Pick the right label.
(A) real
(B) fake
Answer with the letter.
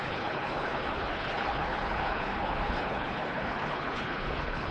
B